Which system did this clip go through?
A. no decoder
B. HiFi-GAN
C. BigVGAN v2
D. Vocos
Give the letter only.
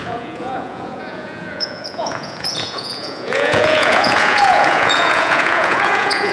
D